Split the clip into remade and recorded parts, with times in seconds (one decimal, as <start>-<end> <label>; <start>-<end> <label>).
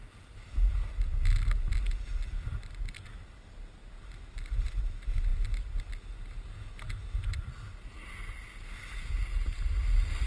0.0-10.3 recorded